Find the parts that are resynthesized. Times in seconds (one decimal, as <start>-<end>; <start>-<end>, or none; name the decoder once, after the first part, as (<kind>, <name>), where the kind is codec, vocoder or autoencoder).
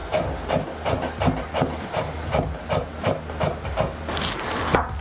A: none